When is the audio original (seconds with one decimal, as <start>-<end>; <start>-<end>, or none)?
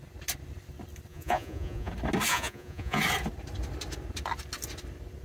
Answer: 0.0-1.1; 1.9-2.3; 3.0-5.2